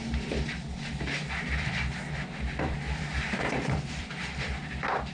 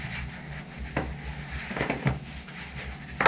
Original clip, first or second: second